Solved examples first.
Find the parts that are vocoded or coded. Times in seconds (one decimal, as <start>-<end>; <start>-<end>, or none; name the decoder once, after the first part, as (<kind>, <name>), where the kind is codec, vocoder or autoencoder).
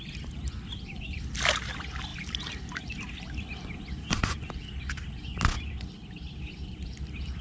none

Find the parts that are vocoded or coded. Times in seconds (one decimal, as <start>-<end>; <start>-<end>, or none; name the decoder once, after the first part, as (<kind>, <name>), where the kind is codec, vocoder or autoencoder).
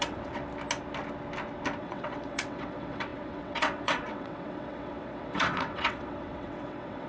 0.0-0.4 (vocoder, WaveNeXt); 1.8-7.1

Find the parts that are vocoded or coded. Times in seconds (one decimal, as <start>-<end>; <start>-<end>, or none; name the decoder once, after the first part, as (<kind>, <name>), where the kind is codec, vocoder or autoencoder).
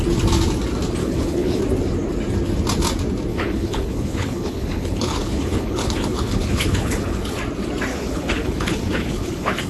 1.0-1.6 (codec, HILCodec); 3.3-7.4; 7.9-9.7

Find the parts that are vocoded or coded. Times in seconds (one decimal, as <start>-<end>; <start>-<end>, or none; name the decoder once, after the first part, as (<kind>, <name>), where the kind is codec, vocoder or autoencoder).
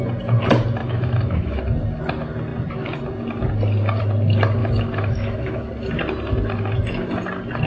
0.8-1.6 (autoencoder, DAC-VAE); 4.6-5.7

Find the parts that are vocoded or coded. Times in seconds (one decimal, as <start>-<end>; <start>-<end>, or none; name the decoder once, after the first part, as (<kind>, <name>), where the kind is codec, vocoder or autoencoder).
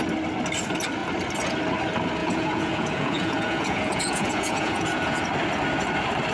2.2-5.2 (vocoder, Vocos)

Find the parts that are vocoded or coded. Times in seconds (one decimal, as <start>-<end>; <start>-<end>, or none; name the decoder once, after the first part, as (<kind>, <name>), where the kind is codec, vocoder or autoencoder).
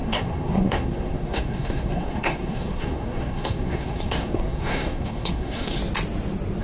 0.0-5.8 (codec, SNAC)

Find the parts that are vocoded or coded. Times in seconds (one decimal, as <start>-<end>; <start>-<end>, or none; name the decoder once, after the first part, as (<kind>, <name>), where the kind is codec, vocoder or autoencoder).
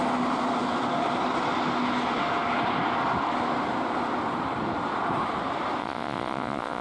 5.8-6.8 (vocoder, Vocos)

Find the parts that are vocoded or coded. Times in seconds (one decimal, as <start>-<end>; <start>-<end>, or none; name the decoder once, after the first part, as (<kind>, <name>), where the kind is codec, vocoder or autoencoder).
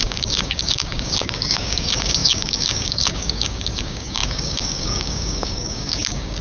0.0-6.4 (codec, DAC)